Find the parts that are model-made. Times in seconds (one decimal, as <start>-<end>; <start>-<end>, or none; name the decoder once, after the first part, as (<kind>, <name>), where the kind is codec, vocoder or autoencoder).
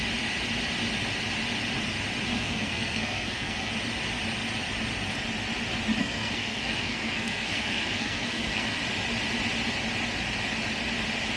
2.3-3.7 (codec, SNAC); 6.0-8.8